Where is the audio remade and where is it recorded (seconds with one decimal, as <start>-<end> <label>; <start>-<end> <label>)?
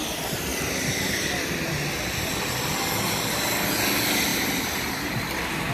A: 0.0-5.7 recorded